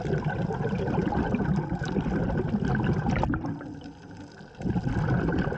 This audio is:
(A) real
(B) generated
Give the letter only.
A